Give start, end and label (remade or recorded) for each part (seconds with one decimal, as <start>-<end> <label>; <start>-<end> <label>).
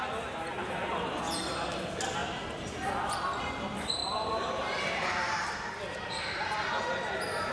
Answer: 0.0-0.6 recorded; 0.6-1.2 remade; 1.2-4.0 recorded; 4.0-6.5 remade; 6.5-7.5 recorded